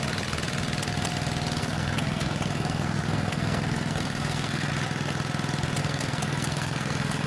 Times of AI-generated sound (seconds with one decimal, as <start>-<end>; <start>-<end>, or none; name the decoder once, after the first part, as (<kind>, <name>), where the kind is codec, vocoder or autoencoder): 1.6-4.7 (codec, SNAC); 5.8-7.3